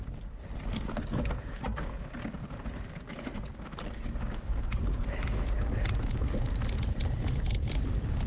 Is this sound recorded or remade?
recorded